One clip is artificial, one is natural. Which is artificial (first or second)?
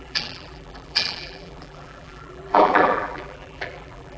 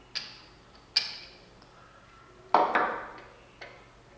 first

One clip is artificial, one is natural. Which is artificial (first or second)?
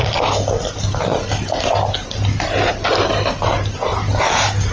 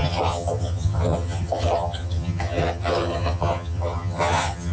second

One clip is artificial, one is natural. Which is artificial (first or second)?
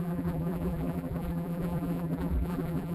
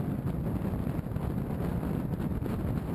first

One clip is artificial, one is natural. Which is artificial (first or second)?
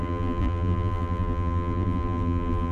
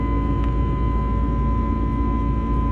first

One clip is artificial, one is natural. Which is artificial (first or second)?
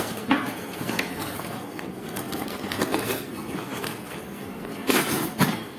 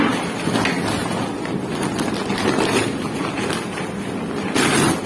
first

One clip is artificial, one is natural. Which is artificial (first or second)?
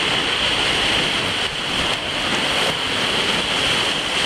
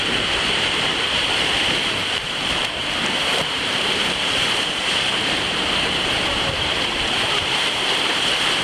second